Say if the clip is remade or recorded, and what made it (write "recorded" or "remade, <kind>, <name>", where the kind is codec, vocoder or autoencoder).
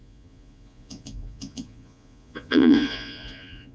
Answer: remade, vocoder, Vocos